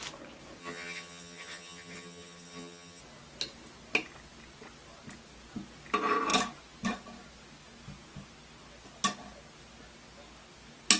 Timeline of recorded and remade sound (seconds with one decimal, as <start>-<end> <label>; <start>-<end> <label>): 0.0-0.6 recorded; 0.6-3.0 remade; 3.0-11.0 recorded